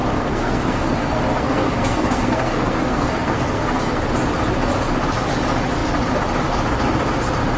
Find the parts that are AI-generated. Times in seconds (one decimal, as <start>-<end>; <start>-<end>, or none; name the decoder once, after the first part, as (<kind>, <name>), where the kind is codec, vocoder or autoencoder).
0.0-4.1 (codec, SNAC)